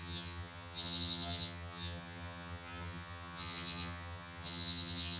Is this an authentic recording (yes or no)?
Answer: no